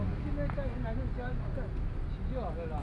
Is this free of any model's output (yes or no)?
yes